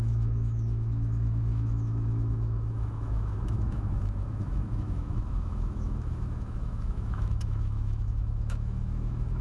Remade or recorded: remade